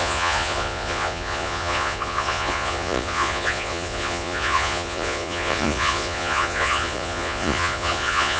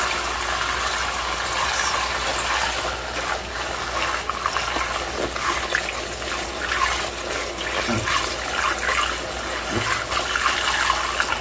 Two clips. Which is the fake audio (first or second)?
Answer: first